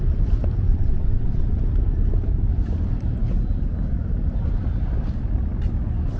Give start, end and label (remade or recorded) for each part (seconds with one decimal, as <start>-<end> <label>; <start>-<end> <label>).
0.0-0.7 recorded; 0.7-1.6 remade; 1.6-6.2 recorded